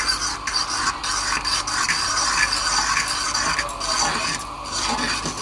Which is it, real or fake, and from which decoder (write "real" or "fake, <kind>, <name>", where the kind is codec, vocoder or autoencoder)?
real